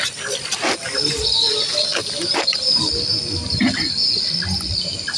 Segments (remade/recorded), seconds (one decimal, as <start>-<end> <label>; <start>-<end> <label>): 0.0-5.2 recorded